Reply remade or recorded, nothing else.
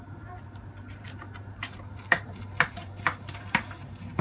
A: remade